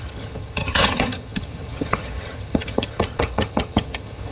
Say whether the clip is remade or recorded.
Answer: remade